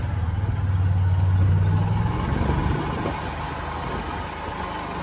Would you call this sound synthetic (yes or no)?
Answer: no